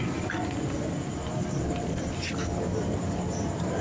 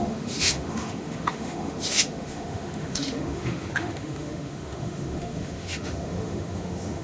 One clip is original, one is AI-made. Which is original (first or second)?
first